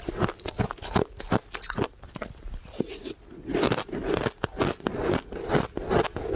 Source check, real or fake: real